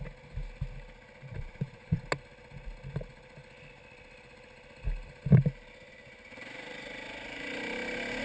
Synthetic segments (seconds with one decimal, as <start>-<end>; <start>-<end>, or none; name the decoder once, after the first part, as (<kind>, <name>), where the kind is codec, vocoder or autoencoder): 1.3-2.0 (vocoder, Vocos)